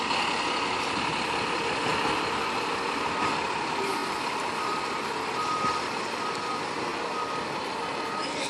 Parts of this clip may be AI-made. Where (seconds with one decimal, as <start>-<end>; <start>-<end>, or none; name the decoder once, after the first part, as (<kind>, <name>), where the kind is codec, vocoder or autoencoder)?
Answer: 0.0-1.9 (vocoder, BigVGAN v2); 3.2-6.9; 7.8-8.5